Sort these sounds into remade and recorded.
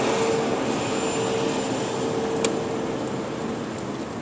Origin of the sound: recorded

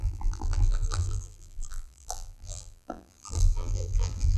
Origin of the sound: remade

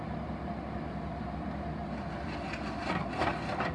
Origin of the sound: recorded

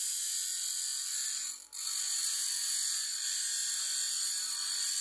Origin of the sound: recorded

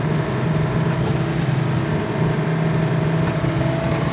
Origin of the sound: recorded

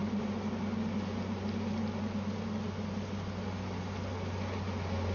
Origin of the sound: recorded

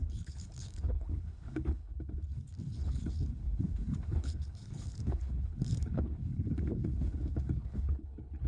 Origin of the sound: remade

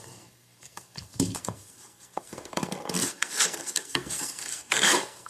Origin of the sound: remade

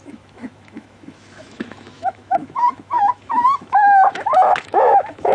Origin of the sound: remade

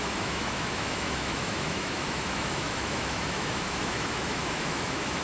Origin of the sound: remade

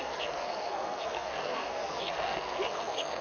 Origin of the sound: remade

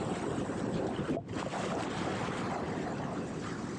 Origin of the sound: recorded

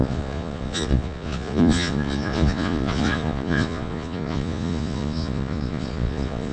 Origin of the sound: remade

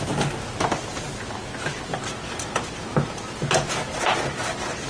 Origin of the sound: recorded